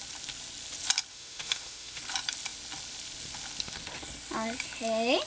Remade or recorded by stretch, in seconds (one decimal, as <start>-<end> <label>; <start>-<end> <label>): 0.0-1.1 recorded; 1.1-2.0 remade; 2.0-5.3 recorded